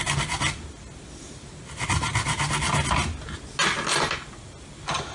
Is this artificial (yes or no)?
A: no